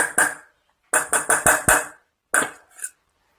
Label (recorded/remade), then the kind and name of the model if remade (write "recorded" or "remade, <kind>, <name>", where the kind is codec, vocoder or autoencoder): recorded